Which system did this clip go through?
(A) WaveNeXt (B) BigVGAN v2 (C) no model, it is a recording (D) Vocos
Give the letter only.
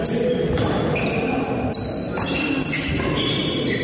C